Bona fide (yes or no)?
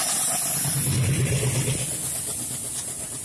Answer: yes